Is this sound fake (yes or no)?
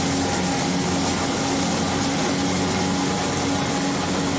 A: no